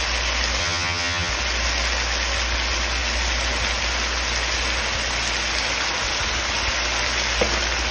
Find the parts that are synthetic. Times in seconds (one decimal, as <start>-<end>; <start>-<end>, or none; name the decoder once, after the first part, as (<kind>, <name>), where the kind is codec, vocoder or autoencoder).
0.6-1.3 (vocoder, HiFi-GAN)